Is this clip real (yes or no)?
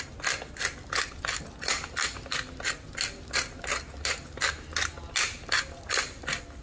yes